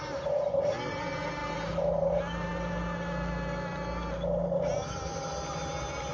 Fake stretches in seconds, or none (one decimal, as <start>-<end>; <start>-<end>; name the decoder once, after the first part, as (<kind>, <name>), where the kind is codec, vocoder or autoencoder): none